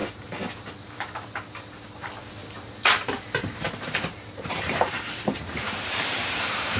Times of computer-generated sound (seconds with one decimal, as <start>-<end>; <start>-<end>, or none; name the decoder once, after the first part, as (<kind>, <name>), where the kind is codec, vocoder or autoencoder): 0.0-2.0 (vocoder, BigVGAN v2); 2.4-6.8